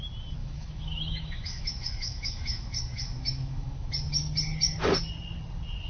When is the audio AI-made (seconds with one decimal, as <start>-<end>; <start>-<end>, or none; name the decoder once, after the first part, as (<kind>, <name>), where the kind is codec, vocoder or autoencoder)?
0.4-3.9 (autoencoder, DAC-VAE)